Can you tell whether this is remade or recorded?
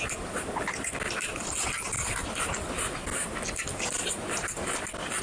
recorded